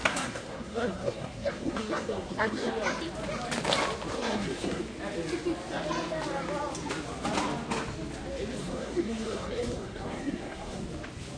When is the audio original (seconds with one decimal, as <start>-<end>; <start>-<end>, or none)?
2.7-4.1; 4.8-8.6; 10.8-11.4